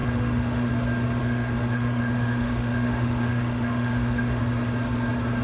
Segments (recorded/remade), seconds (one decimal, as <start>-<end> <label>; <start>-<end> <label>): 0.0-0.7 remade; 0.7-1.2 recorded; 1.2-4.4 remade; 4.4-5.4 recorded